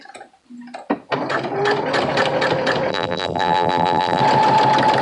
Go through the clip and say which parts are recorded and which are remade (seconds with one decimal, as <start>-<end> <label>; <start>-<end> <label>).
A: 0.0-2.9 recorded; 2.9-4.2 remade; 4.2-5.0 recorded